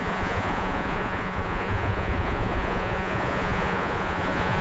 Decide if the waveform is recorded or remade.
remade